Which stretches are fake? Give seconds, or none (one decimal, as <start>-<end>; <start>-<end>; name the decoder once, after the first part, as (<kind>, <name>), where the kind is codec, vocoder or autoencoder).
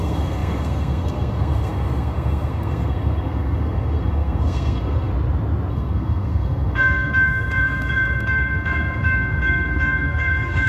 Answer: 0.0-5.1 (codec, SNAC); 5.7-10.7